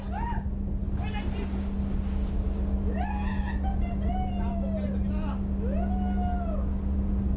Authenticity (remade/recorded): recorded